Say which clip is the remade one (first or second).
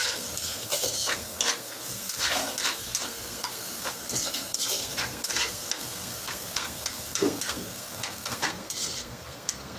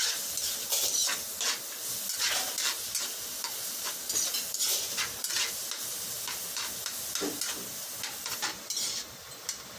first